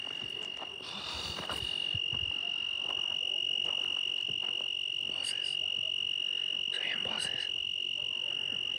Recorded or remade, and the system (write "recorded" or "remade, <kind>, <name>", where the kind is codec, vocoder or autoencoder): recorded